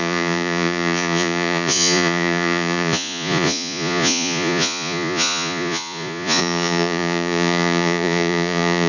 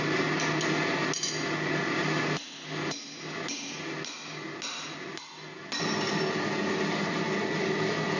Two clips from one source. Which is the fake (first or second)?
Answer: first